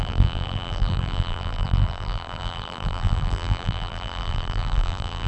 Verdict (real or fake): fake